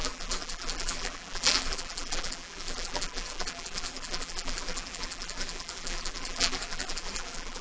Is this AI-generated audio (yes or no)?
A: yes